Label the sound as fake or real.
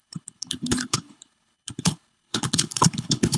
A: fake